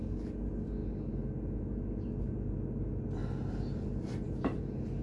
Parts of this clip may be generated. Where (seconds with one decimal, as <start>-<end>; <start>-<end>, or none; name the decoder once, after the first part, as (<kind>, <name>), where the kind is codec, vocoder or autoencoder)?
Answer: 3.2-4.6 (vocoder, BigVGAN v2)